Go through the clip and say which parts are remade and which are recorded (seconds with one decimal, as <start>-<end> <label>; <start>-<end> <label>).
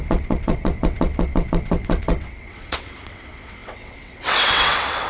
0.0-5.1 remade